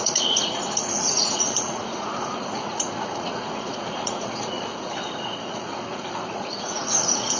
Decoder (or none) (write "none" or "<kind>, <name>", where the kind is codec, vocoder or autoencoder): vocoder, Vocos